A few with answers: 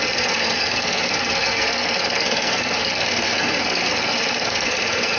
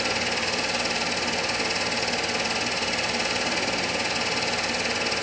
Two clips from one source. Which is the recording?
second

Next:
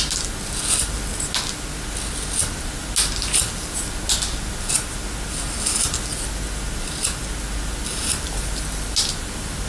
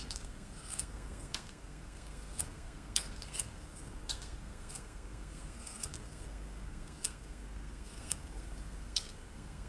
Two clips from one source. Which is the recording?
first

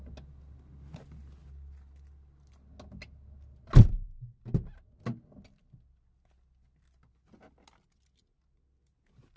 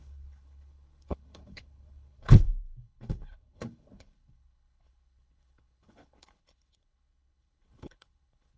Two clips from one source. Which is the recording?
first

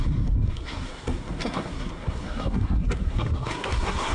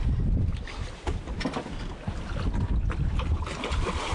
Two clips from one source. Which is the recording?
second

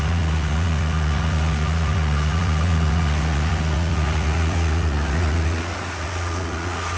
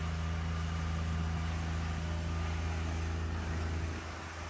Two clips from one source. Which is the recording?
second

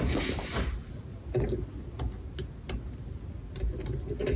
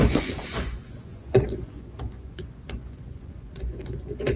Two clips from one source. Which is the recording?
first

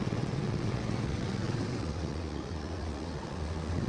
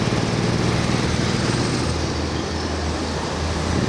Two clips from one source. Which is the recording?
second